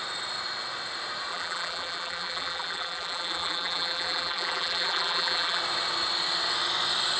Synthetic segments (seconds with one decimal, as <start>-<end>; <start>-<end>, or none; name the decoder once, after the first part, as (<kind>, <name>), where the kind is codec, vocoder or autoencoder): 1.3-5.6 (vocoder, BigVGAN v2)